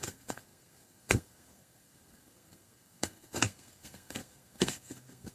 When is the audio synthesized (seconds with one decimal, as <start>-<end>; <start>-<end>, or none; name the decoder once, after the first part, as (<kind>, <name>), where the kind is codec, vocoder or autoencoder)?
0.0-5.3 (codec, SNAC)